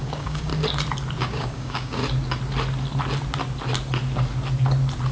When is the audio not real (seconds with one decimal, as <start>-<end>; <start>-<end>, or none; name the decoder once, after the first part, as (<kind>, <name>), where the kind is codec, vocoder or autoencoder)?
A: 0.0-0.5 (codec, DAC); 1.2-2.0